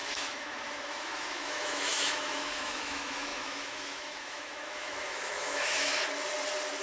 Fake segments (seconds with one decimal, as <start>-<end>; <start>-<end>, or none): 0.0-5.9